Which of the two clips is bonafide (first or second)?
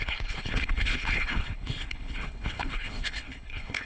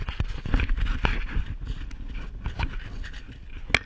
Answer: second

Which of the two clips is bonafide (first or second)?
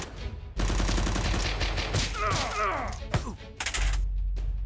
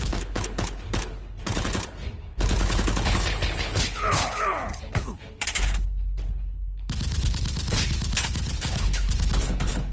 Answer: first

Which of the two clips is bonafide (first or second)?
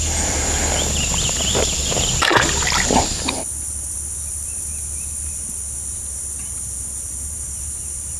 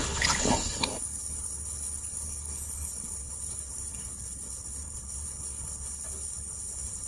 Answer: first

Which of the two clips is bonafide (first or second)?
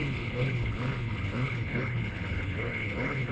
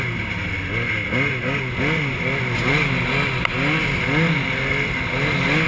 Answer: second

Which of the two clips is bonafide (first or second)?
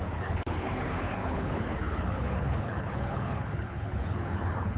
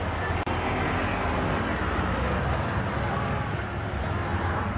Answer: second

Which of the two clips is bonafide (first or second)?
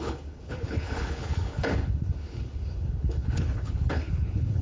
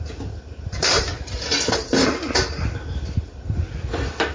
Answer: second